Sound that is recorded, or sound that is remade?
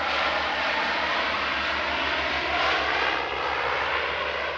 recorded